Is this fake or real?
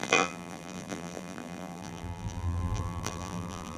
fake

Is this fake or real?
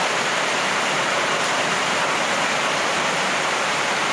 fake